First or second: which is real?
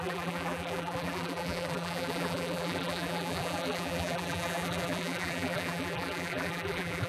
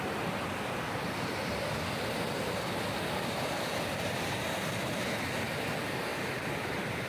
second